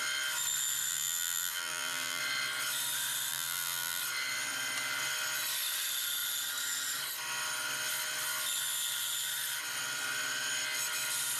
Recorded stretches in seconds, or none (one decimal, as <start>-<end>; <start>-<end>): 0.0-0.9; 2.2-3.3; 4.0-11.4